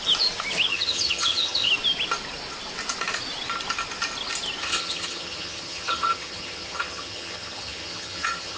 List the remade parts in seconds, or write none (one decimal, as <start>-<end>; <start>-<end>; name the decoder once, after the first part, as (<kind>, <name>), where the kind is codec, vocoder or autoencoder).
0.7-1.7 (vocoder, HiFi-GAN); 4.6-8.6